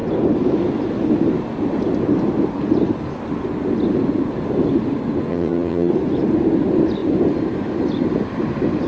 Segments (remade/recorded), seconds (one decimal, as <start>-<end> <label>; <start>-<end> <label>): 0.0-5.3 recorded; 5.3-5.9 remade; 5.9-8.9 recorded